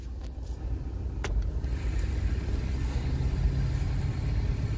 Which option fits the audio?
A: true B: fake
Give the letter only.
A